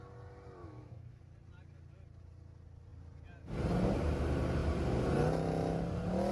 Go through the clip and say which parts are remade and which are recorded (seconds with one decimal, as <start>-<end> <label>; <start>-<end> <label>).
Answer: 0.0-0.6 recorded; 0.6-1.2 remade; 1.2-6.3 recorded